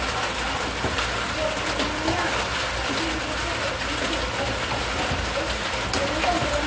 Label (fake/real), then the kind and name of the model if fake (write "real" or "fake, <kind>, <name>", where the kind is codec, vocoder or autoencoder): real